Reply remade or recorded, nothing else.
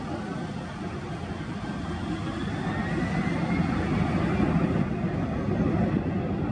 recorded